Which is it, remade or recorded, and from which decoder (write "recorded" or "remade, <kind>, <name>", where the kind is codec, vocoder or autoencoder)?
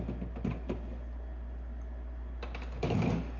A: recorded